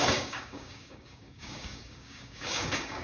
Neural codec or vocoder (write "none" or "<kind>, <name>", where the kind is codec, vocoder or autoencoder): codec, DAC